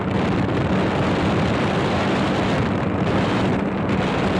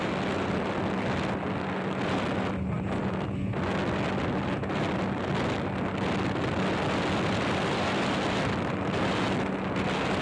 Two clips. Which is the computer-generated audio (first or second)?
first